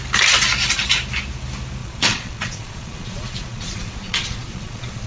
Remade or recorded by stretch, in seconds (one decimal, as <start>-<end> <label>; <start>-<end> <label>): 0.0-1.8 recorded; 1.8-5.1 remade